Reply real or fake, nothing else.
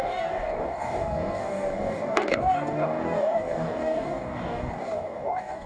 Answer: fake